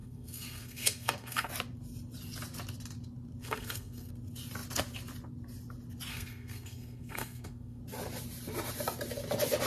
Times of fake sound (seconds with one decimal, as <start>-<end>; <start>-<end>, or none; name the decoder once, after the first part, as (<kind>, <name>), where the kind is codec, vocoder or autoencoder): 0.0-1.5 (codec, SNAC); 3.4-4.1; 6.1-7.8